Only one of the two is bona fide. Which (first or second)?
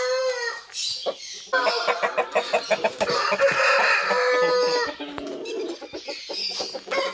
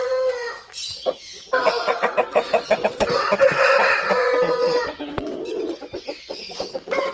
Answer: first